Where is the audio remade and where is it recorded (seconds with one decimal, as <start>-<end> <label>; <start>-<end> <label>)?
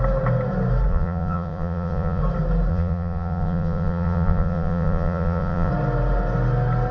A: 0.0-0.9 recorded; 0.9-2.2 remade; 2.2-2.7 recorded; 2.7-5.7 remade; 5.7-6.9 recorded